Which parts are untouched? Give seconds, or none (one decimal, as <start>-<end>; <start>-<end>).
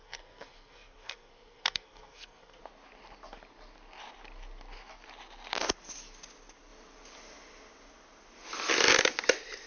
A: 2.6-9.7